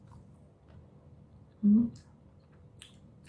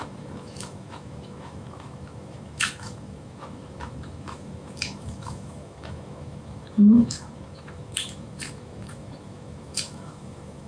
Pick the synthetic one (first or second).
second